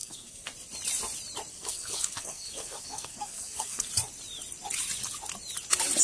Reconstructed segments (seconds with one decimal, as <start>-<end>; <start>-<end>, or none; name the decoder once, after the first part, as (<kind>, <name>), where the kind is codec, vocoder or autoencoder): 0.0-0.5 (codec, SNAC); 1.5-3.9